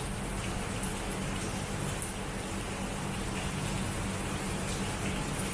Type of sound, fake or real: real